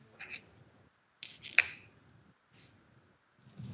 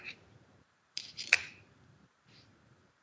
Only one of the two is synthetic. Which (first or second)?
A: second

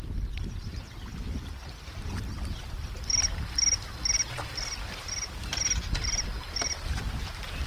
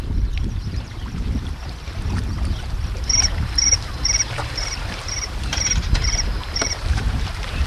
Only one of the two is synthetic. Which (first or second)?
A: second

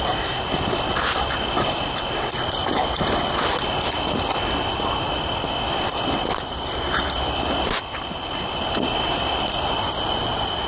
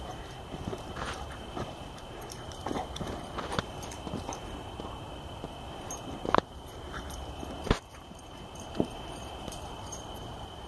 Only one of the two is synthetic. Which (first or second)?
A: second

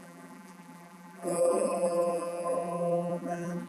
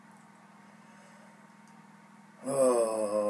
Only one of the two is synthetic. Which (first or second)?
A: first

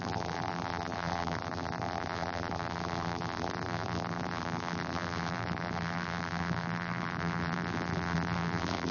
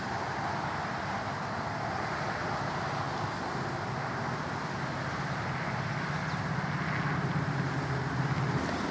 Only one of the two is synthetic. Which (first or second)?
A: first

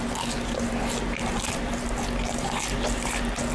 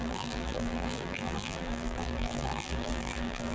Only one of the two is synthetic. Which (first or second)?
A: second